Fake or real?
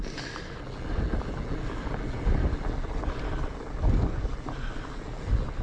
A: real